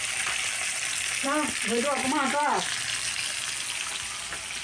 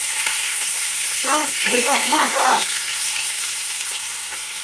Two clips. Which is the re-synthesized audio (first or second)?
second